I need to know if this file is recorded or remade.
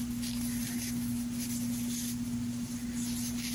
recorded